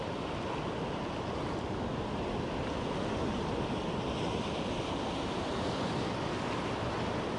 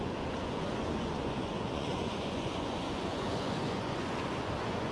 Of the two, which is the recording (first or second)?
first